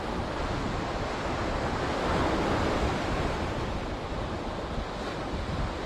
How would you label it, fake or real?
real